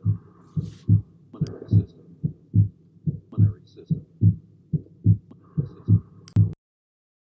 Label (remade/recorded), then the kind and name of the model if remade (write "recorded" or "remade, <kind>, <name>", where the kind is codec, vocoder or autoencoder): recorded